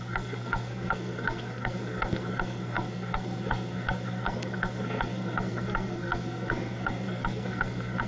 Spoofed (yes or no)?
yes